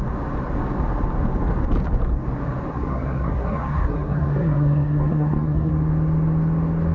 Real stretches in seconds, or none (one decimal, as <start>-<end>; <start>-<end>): 0.0-2.7; 5.7-6.9